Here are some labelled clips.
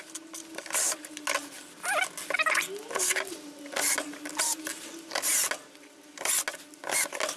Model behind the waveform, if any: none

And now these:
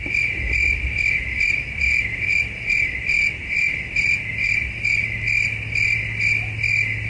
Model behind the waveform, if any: none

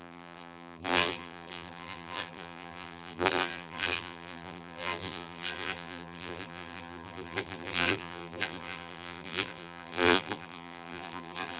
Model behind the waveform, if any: vocoder, BigVGAN v2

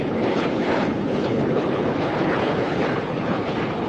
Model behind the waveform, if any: codec, HILCodec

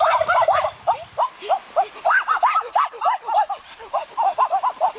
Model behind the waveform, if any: vocoder, BigVGAN v2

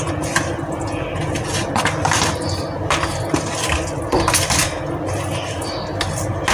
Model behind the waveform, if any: none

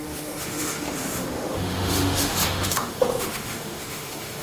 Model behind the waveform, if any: autoencoder, DAC-VAE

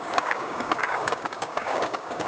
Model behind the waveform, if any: codec, DAC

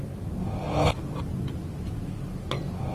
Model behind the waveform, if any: none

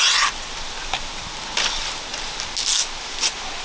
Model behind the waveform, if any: none